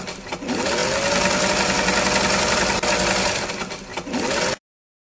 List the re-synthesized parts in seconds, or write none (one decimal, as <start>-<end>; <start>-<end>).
none